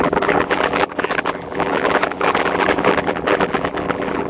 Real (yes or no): no